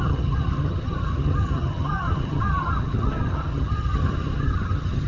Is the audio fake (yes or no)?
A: yes